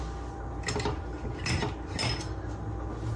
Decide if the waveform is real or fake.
real